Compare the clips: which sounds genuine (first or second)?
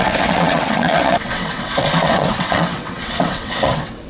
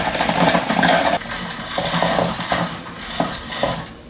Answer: second